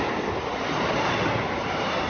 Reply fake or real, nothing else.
real